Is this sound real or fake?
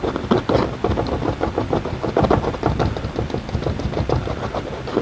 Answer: real